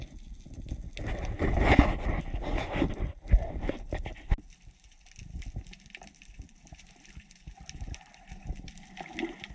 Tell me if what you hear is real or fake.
real